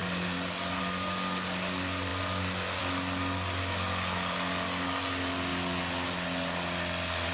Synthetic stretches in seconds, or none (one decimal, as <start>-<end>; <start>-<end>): none